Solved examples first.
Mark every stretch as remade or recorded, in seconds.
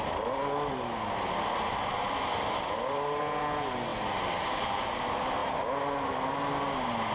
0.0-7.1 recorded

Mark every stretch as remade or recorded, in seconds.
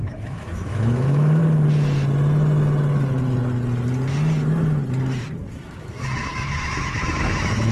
0.0-1.4 remade; 1.4-5.5 recorded; 5.5-7.7 remade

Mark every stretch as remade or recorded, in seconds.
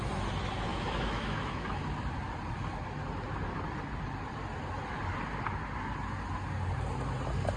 0.0-0.7 recorded; 0.7-1.8 remade; 1.8-7.6 recorded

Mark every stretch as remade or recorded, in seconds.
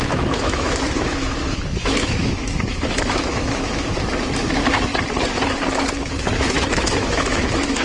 0.0-4.9 remade; 4.9-6.0 recorded; 6.0-7.8 remade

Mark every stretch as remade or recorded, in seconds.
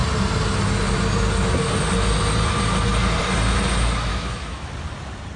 0.0-4.1 recorded; 4.1-4.7 remade; 4.7-5.4 recorded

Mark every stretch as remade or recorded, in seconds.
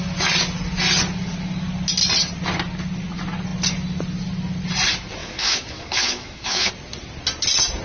0.0-5.2 recorded; 5.2-6.7 remade; 6.7-7.8 recorded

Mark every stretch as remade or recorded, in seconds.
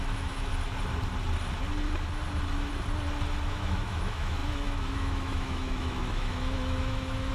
0.0-0.5 remade; 0.5-3.5 recorded; 3.5-7.3 remade